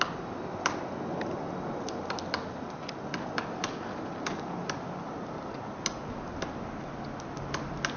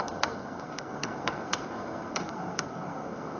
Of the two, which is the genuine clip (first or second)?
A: first